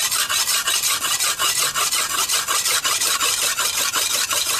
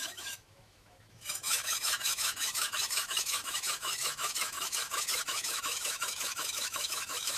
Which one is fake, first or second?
second